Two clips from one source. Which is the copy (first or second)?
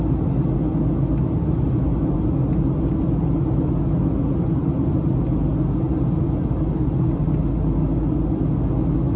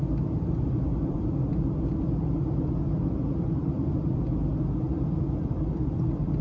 second